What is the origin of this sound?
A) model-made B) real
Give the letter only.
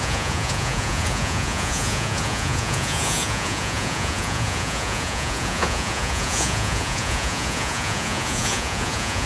A